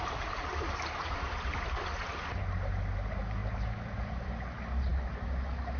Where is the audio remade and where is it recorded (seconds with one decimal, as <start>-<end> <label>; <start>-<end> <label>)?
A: 0.0-5.8 recorded